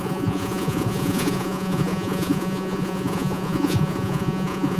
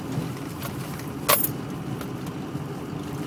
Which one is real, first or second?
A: second